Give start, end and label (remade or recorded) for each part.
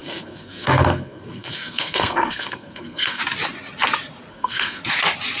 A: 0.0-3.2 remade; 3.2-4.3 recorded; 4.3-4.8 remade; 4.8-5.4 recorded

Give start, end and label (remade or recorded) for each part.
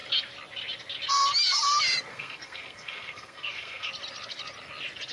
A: 0.0-2.1 recorded; 2.1-3.9 remade; 3.9-5.1 recorded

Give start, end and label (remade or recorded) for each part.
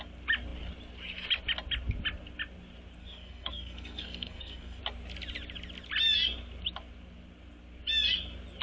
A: 0.0-3.0 recorded; 3.0-4.8 remade; 4.8-8.6 recorded